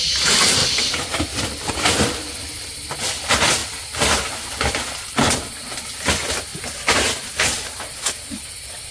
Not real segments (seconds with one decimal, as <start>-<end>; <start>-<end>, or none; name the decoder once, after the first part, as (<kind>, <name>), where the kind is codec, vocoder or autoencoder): 0.6-1.7 (vocoder, BigVGAN v2)